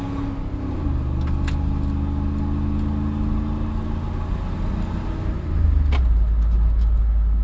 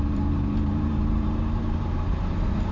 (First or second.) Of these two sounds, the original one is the first